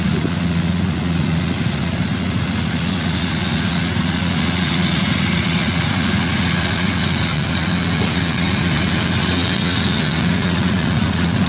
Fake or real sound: fake